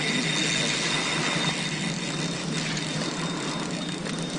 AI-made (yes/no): no